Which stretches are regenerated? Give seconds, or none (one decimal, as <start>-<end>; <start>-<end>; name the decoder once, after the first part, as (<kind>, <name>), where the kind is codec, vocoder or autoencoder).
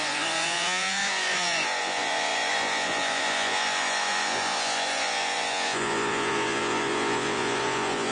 0.0-8.1 (vocoder, Vocos)